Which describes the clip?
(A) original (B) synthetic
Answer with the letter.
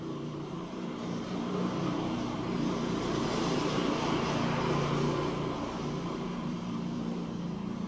B